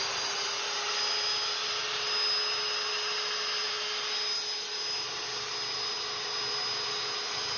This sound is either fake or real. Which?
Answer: real